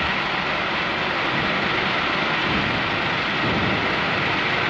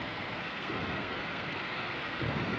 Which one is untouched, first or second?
first